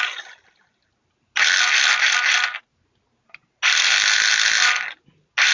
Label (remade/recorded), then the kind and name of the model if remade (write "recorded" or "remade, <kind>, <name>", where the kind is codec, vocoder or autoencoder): recorded